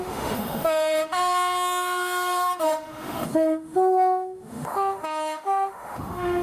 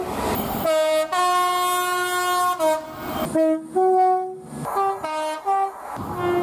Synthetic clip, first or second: first